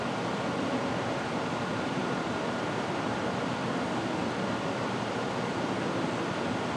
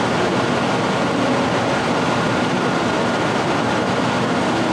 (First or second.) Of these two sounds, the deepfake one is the first